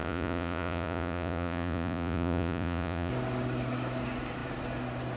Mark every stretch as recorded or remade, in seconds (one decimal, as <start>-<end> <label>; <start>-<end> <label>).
0.0-3.1 remade; 3.1-5.2 recorded